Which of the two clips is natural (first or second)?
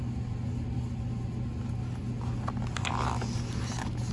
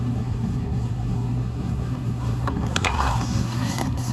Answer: first